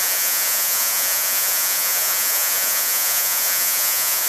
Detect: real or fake fake